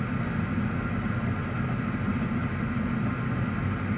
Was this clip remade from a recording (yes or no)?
no